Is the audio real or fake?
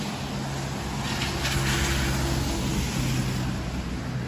real